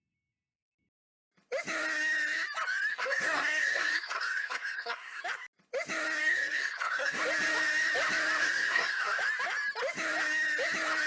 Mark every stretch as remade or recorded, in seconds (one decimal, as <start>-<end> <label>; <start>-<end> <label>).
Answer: 0.0-2.9 recorded; 2.9-5.2 remade; 5.2-6.2 recorded; 6.2-7.2 remade; 7.2-8.4 recorded; 8.4-9.2 remade; 9.2-11.1 recorded